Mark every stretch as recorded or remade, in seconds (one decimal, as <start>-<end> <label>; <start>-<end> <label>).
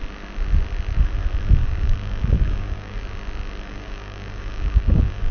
0.0-1.6 recorded; 1.6-3.0 remade; 3.0-3.7 recorded; 3.7-5.3 remade